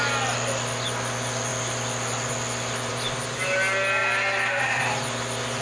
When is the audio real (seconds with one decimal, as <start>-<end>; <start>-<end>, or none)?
0.0-5.6